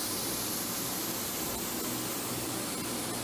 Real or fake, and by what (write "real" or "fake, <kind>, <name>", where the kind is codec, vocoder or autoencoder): real